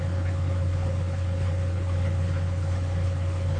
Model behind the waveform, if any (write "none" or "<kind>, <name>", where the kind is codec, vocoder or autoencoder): codec, HILCodec